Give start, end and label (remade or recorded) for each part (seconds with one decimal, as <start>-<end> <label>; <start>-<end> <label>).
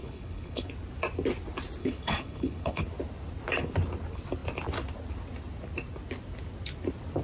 0.0-0.7 remade; 0.7-1.8 recorded; 1.8-2.8 remade; 2.8-7.2 recorded